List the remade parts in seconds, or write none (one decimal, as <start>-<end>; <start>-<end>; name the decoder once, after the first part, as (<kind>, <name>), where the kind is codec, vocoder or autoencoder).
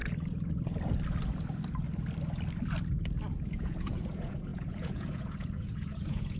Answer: 3.4-6.4 (vocoder, Vocos)